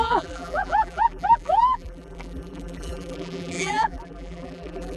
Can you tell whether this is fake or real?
fake